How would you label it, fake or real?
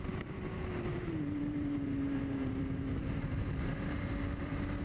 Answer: fake